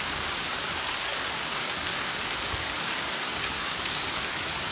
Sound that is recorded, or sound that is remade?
remade